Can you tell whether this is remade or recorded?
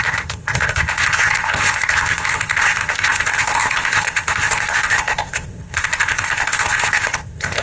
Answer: remade